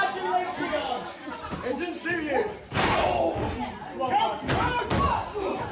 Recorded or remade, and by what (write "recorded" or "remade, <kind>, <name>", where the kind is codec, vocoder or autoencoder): recorded